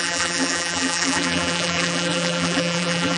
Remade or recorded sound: remade